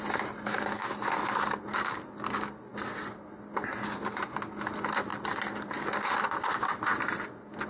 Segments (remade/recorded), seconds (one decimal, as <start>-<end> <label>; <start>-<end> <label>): 0.0-7.7 recorded

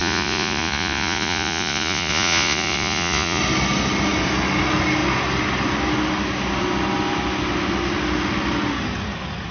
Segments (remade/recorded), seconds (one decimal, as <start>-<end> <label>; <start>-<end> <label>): 0.0-3.4 remade; 3.4-9.5 recorded

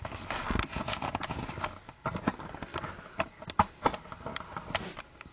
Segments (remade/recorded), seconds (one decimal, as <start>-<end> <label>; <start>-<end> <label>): 0.0-0.7 recorded; 0.7-1.5 remade; 1.5-5.3 recorded

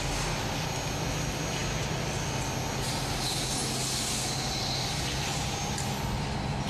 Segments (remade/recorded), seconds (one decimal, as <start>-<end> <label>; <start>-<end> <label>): 0.0-6.7 recorded

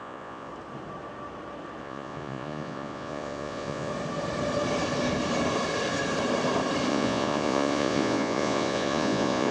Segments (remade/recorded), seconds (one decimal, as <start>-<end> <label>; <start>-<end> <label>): 0.0-0.5 remade; 0.5-1.8 recorded; 1.8-3.9 remade; 3.9-6.9 recorded; 6.9-9.5 remade

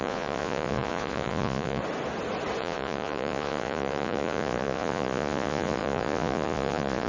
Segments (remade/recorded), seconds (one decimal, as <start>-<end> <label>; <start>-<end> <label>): 0.0-1.8 remade; 1.8-2.6 recorded; 2.6-7.1 remade

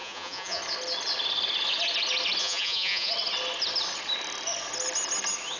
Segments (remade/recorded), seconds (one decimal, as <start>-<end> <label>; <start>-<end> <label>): 0.0-0.6 remade; 0.6-2.4 recorded; 2.4-3.1 remade; 3.1-5.6 recorded